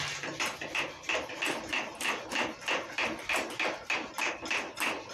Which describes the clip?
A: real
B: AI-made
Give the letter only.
A